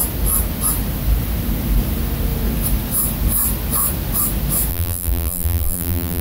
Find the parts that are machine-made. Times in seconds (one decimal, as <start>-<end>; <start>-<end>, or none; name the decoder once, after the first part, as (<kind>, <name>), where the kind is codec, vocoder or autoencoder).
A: 4.7-6.2 (vocoder, BigVGAN v2)